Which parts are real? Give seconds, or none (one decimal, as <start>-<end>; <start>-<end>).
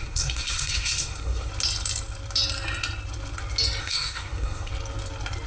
1.5-3.8; 4.7-5.5